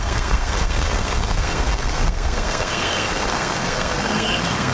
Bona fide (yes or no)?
no